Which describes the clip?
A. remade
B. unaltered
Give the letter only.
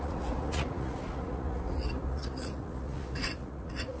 A